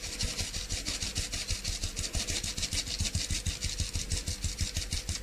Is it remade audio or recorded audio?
recorded